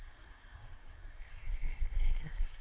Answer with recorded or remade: remade